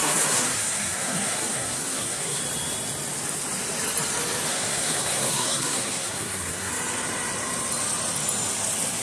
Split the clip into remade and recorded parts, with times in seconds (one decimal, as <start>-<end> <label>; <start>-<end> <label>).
0.0-2.4 remade; 2.4-4.5 recorded; 4.5-6.7 remade; 6.7-9.0 recorded